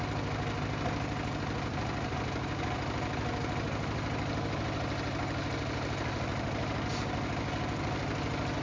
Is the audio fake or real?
real